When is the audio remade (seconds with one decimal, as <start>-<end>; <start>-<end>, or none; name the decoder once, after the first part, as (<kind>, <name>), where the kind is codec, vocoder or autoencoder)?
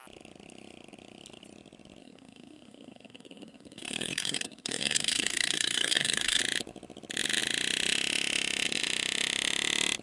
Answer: 2.0-6.4 (codec, SNAC)